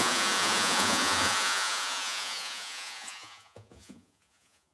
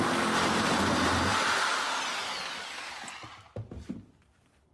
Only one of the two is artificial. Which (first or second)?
first